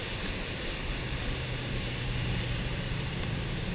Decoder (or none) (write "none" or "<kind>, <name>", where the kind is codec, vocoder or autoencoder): vocoder, BigVGAN v2